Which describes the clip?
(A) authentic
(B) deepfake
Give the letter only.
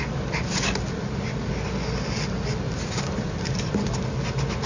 A